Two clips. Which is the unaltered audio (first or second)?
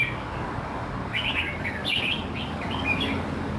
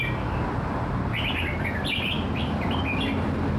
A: second